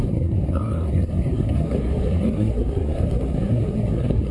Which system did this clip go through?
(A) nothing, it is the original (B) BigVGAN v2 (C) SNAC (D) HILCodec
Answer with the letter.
C